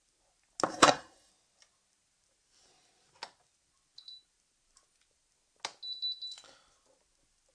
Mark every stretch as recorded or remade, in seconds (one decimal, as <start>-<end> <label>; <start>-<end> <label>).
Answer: 0.0-0.7 recorded; 0.7-1.3 remade; 1.3-7.5 recorded